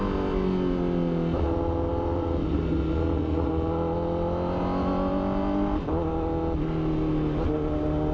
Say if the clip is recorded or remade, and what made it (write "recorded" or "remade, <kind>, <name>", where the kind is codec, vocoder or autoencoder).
recorded